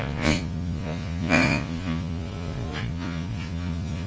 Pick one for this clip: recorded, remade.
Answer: remade